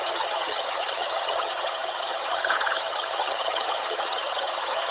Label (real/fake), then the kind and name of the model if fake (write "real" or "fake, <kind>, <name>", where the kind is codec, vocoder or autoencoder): fake, vocoder, HiFi-GAN